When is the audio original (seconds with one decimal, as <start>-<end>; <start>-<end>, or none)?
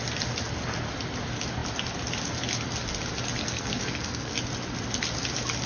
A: 0.0-3.4; 4.3-5.7